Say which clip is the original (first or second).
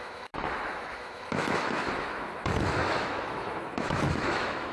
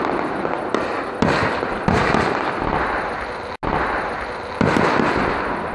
second